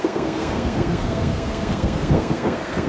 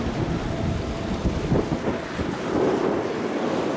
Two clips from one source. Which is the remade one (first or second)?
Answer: first